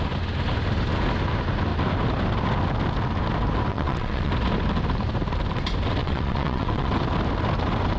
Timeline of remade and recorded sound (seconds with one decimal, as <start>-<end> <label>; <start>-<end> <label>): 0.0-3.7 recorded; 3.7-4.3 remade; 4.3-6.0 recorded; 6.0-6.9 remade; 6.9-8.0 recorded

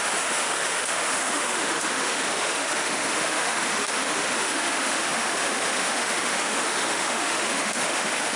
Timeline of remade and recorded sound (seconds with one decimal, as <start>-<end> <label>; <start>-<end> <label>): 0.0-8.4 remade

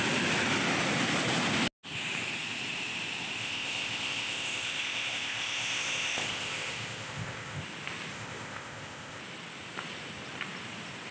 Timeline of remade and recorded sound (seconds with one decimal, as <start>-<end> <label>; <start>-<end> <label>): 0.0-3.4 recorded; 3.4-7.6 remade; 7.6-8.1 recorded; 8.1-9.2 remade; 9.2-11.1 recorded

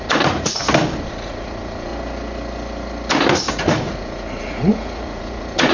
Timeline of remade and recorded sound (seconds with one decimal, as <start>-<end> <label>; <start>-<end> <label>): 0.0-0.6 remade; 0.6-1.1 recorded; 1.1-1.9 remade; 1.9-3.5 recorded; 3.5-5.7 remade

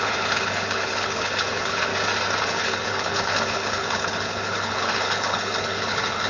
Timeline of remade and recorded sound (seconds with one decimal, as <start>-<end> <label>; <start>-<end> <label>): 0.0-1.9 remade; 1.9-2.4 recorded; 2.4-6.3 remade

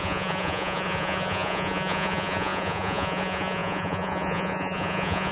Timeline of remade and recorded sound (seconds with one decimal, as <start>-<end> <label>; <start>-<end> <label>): 0.0-5.3 remade